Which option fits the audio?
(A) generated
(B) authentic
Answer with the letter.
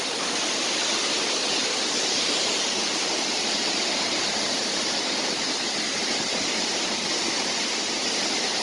B